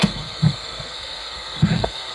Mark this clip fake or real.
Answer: fake